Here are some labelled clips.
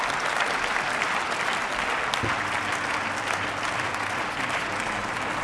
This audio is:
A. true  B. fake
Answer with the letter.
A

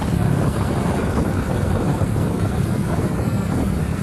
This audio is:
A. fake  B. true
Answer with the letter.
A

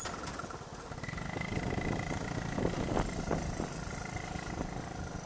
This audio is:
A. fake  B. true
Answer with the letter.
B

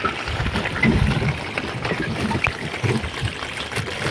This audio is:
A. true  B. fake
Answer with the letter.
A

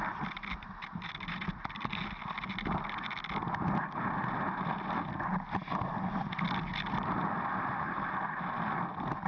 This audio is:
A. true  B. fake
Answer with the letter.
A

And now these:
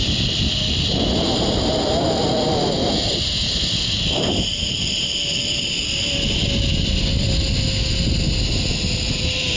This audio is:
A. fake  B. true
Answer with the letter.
B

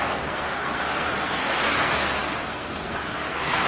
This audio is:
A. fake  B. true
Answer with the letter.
A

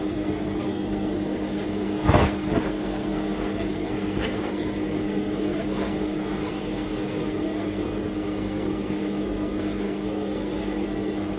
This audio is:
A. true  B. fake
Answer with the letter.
B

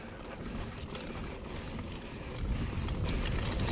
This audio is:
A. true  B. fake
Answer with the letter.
A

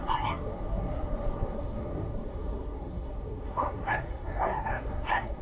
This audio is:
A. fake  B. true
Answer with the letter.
A